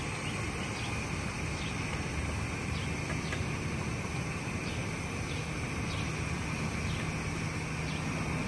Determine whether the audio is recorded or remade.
recorded